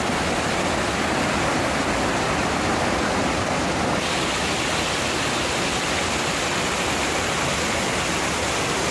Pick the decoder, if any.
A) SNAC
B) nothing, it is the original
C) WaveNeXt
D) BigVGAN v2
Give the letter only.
B